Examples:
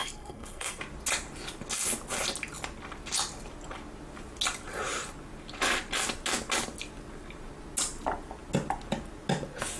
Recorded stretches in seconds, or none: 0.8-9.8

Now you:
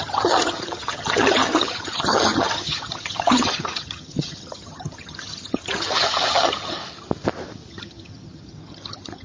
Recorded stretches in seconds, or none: 6.8-7.7